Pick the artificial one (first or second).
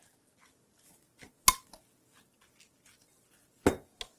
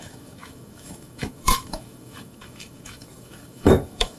second